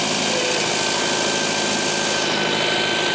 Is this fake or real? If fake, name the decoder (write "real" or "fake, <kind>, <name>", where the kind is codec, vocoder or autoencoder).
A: real